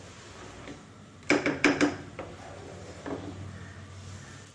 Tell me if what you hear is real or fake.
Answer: fake